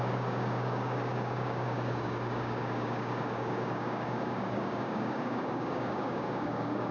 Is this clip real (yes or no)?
no